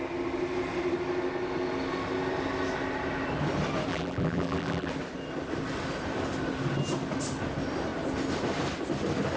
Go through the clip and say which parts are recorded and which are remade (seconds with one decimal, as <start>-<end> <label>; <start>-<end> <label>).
0.0-3.9 recorded; 3.9-4.9 remade; 4.9-9.4 recorded